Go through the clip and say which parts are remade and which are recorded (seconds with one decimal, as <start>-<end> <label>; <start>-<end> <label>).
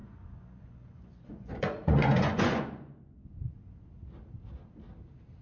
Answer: 0.0-3.2 remade; 3.2-5.4 recorded